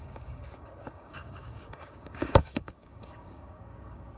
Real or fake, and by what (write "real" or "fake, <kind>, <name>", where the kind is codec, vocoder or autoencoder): fake, codec, DAC